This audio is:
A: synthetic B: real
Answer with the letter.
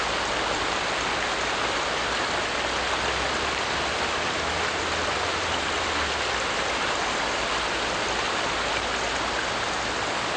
B